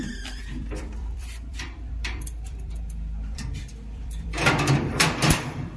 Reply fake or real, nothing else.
fake